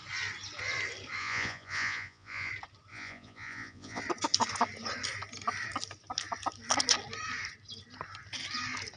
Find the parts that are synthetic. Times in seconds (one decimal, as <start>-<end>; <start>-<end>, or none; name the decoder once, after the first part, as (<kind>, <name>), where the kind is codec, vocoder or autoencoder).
1.2-2.5 (vocoder, Vocos); 2.9-4.0